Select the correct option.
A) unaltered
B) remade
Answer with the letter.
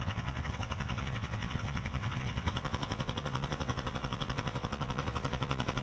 B